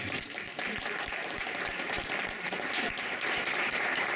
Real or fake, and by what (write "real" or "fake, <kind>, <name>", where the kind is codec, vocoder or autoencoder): fake, vocoder, BigVGAN v2